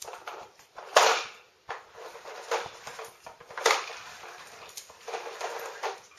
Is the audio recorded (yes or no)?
no